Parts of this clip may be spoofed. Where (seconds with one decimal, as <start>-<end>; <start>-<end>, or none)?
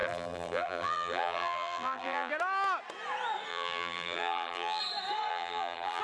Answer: 0.0-2.3; 3.5-4.8; 5.3-6.0